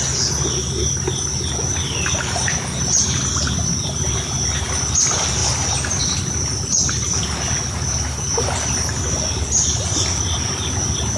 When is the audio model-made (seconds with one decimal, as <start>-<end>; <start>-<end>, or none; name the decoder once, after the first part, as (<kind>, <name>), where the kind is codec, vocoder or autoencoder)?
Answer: none

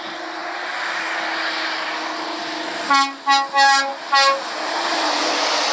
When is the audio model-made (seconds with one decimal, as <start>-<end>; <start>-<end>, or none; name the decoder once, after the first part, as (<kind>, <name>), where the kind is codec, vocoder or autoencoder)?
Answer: none

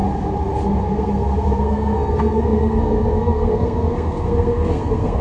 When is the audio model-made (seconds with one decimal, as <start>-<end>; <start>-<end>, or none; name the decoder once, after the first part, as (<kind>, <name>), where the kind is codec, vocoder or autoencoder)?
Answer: 0.8-5.2 (codec, SNAC)

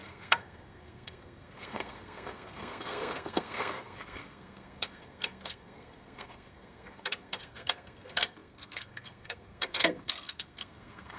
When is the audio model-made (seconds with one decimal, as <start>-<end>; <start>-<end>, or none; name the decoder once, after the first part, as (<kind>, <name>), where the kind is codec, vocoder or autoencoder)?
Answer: 0.0-11.2 (codec, SNAC)

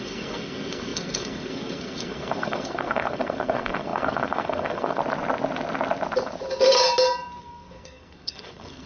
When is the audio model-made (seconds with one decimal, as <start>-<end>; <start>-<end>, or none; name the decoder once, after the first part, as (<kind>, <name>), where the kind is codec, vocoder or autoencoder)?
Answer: 0.0-5.0 (codec, SNAC); 7.4-8.9

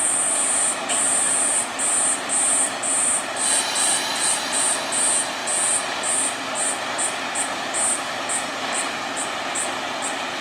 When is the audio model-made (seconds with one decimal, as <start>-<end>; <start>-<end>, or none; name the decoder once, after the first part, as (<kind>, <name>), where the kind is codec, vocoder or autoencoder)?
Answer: none

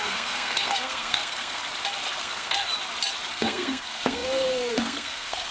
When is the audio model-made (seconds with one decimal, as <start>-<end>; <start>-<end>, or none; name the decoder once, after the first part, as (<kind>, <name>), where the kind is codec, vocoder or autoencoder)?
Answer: 0.0-1.6 (codec, SNAC); 2.2-2.7; 3.3-5.5